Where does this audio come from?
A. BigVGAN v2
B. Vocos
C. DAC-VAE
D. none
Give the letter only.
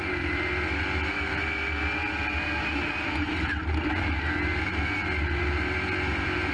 D